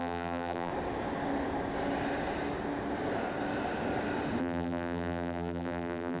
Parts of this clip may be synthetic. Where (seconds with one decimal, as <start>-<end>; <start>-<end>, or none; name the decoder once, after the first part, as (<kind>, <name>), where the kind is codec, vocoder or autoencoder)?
0.0-0.7 (vocoder, BigVGAN v2); 4.4-6.2